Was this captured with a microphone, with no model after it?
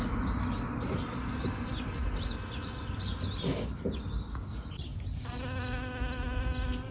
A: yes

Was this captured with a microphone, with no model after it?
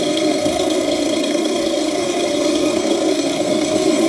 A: no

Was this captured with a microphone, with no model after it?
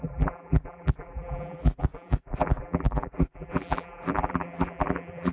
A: no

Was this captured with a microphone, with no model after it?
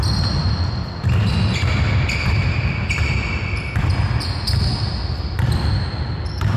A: yes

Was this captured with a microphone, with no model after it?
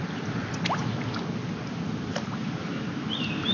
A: yes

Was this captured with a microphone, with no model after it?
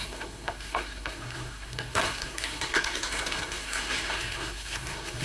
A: no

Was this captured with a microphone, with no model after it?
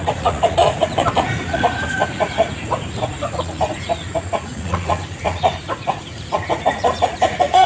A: no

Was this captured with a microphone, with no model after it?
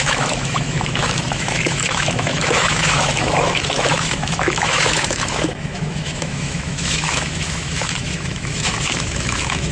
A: no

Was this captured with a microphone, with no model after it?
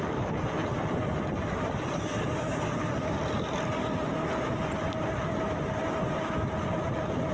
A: yes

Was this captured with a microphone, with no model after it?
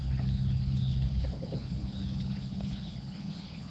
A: no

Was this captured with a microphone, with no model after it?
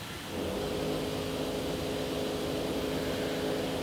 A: yes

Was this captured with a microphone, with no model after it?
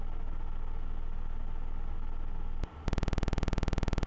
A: yes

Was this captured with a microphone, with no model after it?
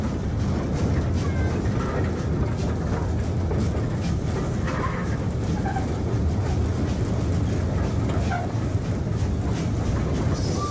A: yes